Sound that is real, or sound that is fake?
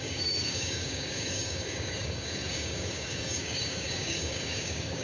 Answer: fake